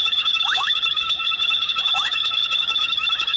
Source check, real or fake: fake